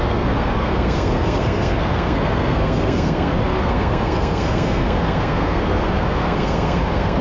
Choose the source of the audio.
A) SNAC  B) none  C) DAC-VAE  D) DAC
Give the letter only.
A